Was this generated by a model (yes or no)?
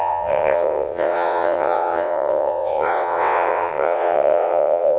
yes